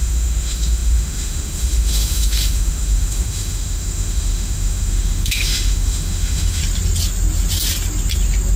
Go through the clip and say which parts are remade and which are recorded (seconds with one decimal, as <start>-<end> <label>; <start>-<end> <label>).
0.0-6.6 remade; 6.6-8.6 recorded